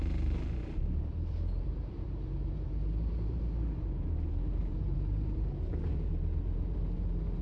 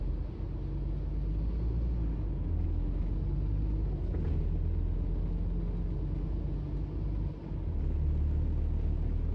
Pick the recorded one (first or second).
second